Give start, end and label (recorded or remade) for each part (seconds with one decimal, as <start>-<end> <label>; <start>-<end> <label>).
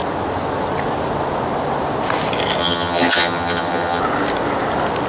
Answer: 0.0-2.6 recorded; 2.6-4.0 remade; 4.0-5.1 recorded